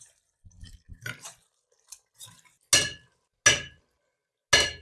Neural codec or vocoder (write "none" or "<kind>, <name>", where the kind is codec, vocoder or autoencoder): none